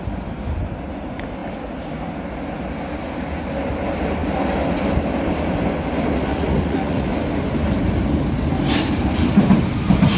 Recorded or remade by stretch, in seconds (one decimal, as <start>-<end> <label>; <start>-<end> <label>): 0.0-6.3 recorded; 6.3-7.1 remade; 7.1-10.2 recorded